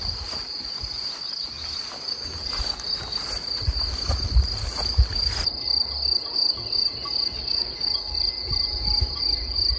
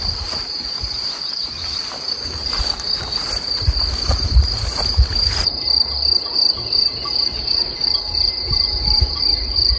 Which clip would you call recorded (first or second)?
first